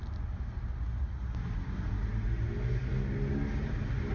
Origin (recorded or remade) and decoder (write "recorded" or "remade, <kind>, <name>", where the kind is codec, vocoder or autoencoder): recorded